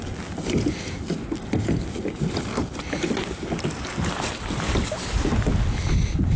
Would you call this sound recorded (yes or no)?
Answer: yes